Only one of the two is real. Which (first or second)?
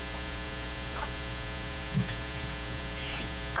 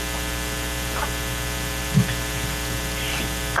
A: second